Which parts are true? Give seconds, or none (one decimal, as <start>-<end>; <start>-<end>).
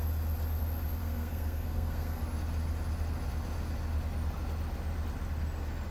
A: 0.0-1.0; 2.2-5.9